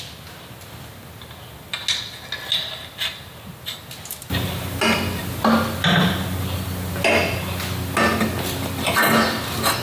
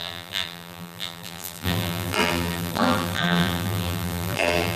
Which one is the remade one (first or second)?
second